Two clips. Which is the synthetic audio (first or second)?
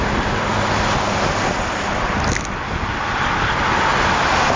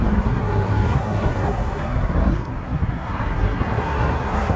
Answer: second